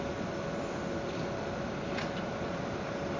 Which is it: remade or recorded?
remade